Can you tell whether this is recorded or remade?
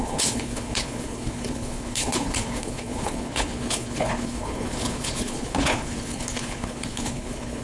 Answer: remade